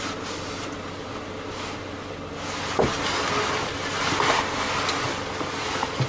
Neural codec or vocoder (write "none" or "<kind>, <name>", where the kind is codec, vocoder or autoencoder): none